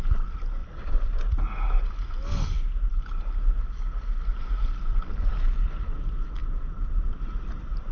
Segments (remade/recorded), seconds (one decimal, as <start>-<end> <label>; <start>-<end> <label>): 0.0-0.6 remade; 0.6-5.3 recorded; 5.3-7.9 remade